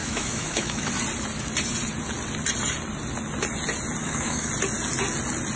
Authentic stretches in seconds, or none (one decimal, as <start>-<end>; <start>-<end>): 0.9-4.0; 4.5-5.6